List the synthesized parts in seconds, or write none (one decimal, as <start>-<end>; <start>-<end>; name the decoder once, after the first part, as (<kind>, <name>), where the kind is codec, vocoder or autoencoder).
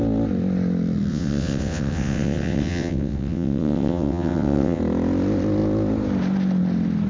1.1-4.8 (vocoder, WaveNeXt)